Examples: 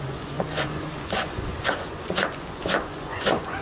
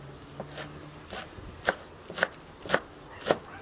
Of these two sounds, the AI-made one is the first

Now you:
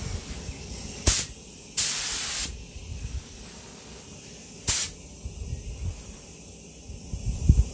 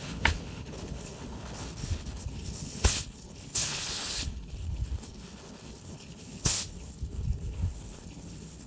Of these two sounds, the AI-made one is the second